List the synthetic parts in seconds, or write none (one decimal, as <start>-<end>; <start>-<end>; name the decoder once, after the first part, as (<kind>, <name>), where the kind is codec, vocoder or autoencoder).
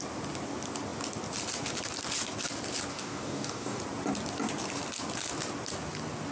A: 2.9-3.8 (codec, DAC)